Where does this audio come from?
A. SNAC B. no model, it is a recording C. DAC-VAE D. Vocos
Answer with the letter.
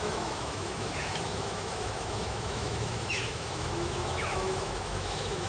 C